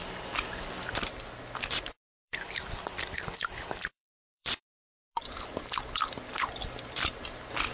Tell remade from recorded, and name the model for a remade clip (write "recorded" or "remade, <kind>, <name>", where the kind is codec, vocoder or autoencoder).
remade, vocoder, BigVGAN v2